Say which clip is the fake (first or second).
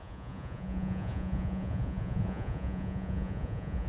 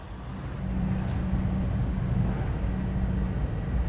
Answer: first